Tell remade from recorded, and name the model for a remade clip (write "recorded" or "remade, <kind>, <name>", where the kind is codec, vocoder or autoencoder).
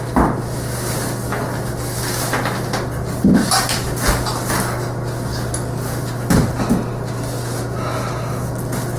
recorded